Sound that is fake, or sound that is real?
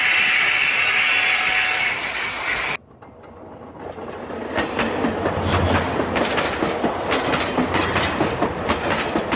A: real